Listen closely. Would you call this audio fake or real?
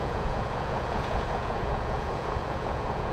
fake